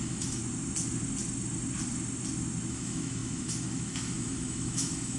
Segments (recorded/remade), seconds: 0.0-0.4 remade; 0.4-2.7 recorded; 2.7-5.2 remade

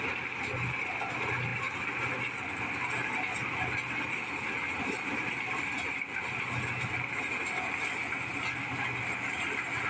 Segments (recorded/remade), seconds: 0.0-9.9 recorded

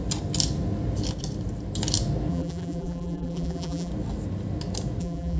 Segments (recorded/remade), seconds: 0.0-2.3 recorded; 2.3-3.9 remade; 3.9-5.0 recorded; 5.0-5.4 remade

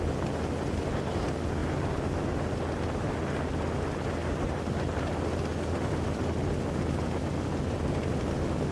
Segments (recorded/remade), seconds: 0.0-8.7 recorded

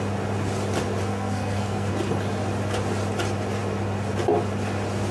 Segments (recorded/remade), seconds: 0.0-1.1 recorded; 1.1-1.9 remade; 1.9-5.1 recorded

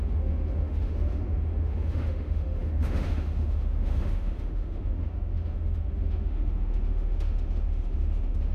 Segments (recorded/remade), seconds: 0.0-8.5 remade

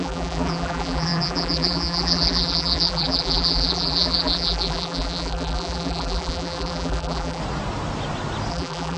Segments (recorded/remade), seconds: 0.0-7.4 remade; 7.4-8.5 recorded; 8.5-9.0 remade

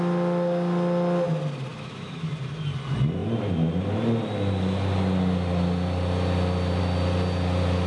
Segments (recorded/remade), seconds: 0.0-1.7 recorded; 1.7-2.3 remade; 2.3-7.9 recorded